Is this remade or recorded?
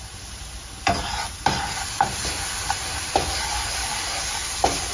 recorded